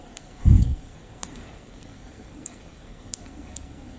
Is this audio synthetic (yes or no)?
yes